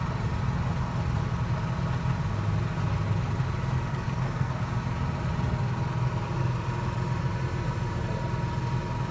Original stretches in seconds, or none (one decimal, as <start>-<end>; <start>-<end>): 0.0-3.9; 4.6-9.1